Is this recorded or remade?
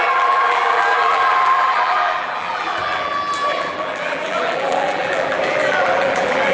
remade